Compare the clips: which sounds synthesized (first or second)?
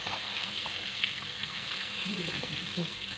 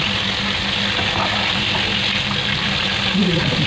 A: first